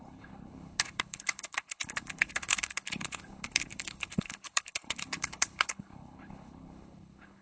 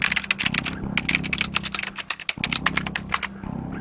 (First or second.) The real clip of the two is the second